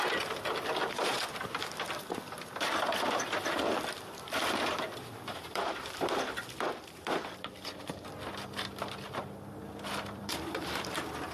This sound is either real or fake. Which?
fake